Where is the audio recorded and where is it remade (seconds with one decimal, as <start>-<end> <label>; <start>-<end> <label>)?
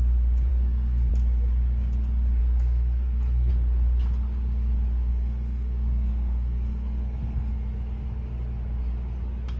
0.0-0.5 recorded; 0.5-1.1 remade; 1.1-2.4 recorded; 2.4-3.5 remade; 3.5-5.1 recorded; 5.1-7.5 remade; 7.5-9.6 recorded